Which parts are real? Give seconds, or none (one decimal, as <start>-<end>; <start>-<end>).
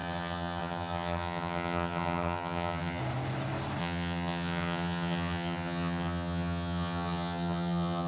3.0-3.8